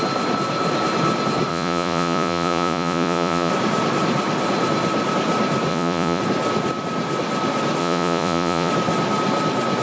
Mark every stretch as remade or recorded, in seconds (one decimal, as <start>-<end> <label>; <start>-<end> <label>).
0.0-1.5 recorded; 1.5-3.5 remade; 3.5-5.7 recorded; 5.7-6.2 remade; 6.2-7.8 recorded; 7.8-8.7 remade; 8.7-9.8 recorded